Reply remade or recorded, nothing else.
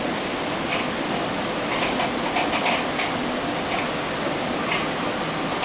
recorded